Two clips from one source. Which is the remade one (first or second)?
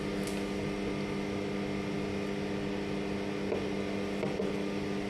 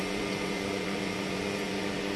second